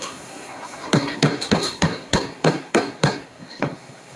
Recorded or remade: remade